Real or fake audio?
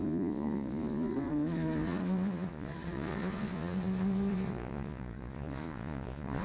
fake